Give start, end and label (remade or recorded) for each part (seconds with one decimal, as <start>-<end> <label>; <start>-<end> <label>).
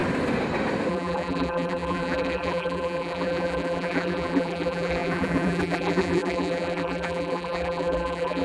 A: 0.0-0.9 recorded; 0.9-8.4 remade